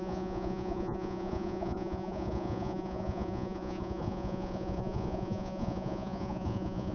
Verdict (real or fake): fake